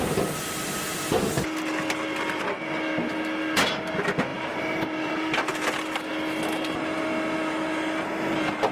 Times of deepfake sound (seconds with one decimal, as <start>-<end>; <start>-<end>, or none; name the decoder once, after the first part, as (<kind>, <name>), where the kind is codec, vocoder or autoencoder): 4.3-5.1 (vocoder, BigVGAN v2)